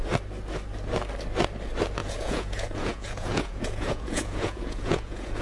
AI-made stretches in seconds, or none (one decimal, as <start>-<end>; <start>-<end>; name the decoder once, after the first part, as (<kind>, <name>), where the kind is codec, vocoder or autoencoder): 2.0-5.4 (vocoder, Vocos)